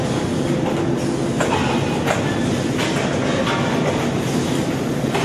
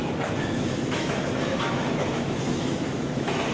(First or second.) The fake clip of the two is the second